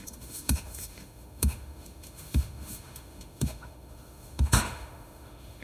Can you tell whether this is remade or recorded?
remade